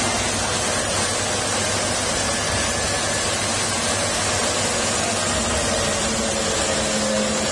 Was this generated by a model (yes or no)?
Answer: no